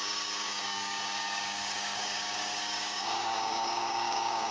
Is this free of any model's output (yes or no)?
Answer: no